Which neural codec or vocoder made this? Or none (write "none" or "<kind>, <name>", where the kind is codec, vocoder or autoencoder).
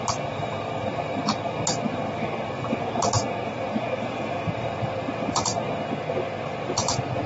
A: none